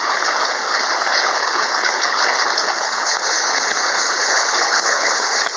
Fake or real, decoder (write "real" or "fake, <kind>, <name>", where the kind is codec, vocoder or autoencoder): fake, codec, HILCodec